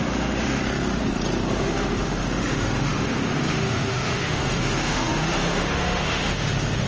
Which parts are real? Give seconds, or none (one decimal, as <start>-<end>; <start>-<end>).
0.6-1.6